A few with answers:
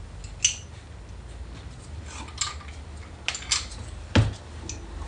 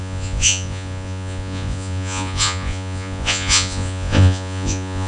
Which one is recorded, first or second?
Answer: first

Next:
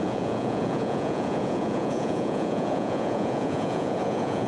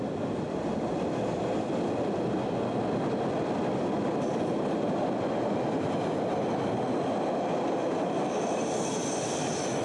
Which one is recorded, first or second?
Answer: second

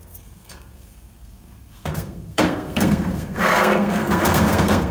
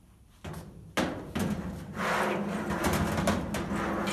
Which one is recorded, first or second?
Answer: second